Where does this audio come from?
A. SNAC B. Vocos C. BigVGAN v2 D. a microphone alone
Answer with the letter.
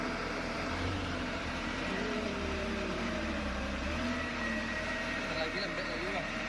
C